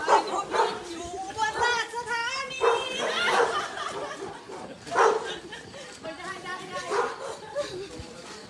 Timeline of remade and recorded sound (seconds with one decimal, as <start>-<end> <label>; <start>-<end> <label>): 0.0-8.5 recorded